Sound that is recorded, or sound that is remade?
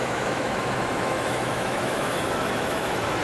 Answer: remade